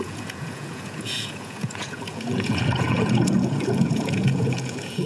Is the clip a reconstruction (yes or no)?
yes